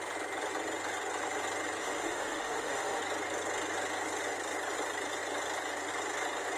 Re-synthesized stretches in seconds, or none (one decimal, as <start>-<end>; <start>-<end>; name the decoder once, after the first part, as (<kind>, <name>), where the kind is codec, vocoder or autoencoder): 1.8-3.0 (autoencoder, DAC-VAE)